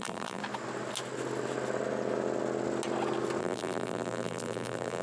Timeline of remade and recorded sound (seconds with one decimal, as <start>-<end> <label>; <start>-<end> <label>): 0.0-0.4 remade; 0.4-3.4 recorded; 3.4-5.0 remade